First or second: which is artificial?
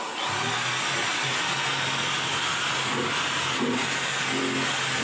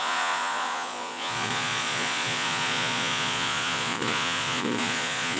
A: second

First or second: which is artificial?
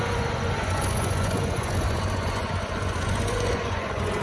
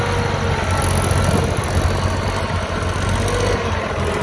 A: first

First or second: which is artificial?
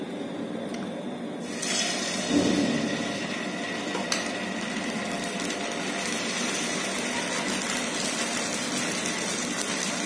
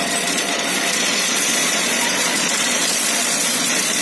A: second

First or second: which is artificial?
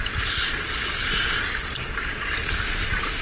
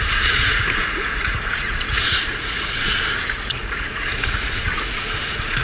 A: second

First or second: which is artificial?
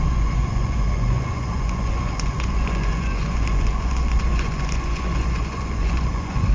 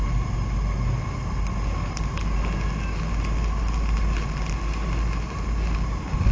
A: first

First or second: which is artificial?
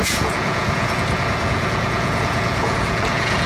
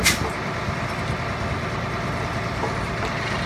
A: first